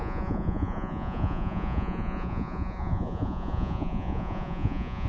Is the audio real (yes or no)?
no